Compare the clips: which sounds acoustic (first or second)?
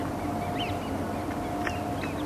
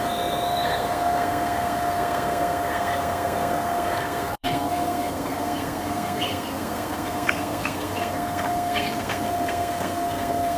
first